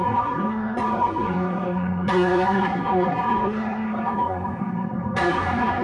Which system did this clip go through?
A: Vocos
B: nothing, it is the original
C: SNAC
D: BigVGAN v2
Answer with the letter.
C